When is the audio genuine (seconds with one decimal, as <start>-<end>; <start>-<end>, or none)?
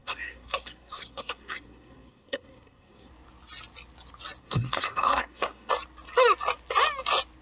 3.1-4.4; 5.7-7.4